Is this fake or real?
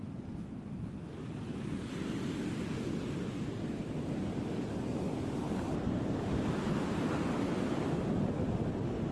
real